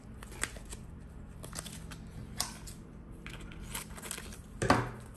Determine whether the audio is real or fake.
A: real